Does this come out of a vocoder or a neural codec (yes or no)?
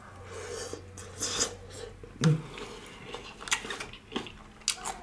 no